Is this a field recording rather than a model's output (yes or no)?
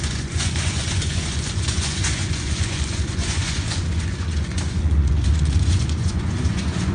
no